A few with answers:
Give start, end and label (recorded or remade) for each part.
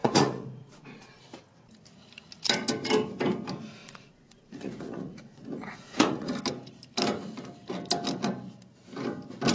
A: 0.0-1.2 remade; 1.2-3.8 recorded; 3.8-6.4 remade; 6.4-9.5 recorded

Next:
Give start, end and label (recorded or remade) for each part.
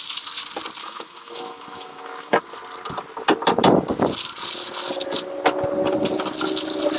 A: 0.0-0.8 recorded; 0.8-2.4 remade; 2.4-7.0 recorded